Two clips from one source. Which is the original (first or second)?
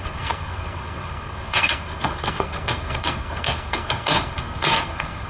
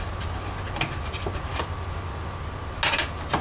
second